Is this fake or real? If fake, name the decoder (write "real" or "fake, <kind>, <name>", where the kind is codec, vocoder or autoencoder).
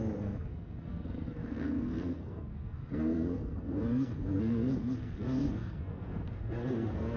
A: fake, codec, SNAC